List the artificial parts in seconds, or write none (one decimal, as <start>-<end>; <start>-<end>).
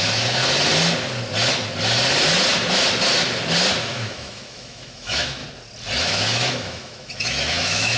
0.0-0.4; 3.8-5.4; 6.0-8.0